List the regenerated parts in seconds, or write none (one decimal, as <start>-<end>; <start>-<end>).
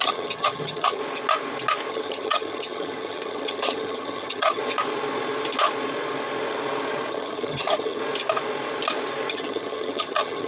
0.0-1.0; 1.9-4.6; 7.1-8.0; 9.3-10.5